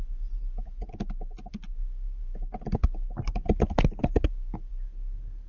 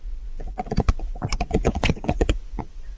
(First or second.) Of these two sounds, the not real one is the second